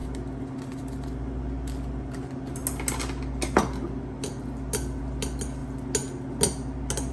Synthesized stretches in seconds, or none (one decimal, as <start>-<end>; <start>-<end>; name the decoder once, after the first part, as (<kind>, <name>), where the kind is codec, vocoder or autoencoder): none